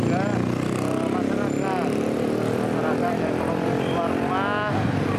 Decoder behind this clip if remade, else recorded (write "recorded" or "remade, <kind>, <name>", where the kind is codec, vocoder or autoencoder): recorded